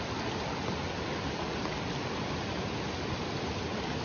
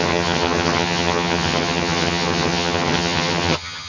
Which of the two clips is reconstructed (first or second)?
second